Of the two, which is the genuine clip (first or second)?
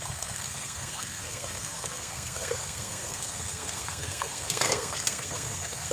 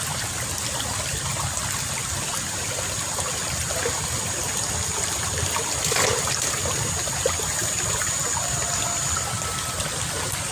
second